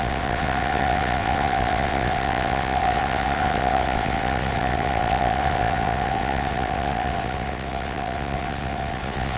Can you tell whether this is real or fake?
fake